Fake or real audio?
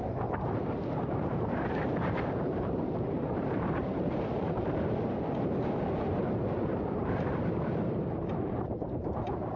fake